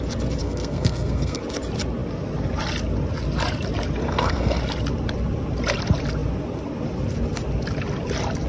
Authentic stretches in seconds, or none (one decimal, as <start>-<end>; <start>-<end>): 0.0-0.4; 1.4-4.0; 4.6-8.5